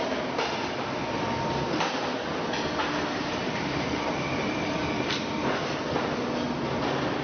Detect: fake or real real